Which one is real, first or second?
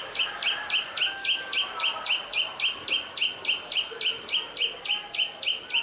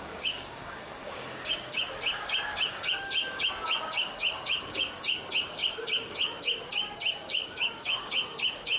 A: first